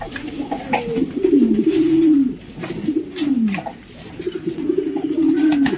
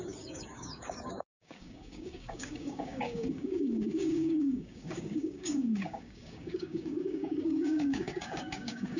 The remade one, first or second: second